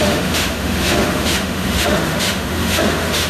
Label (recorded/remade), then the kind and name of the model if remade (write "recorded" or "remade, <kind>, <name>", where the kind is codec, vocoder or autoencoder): remade, autoencoder, DAC-VAE